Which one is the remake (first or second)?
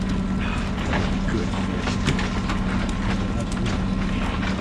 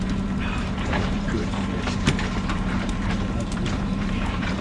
second